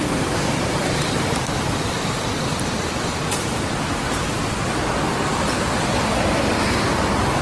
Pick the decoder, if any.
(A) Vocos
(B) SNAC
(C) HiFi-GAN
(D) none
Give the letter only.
D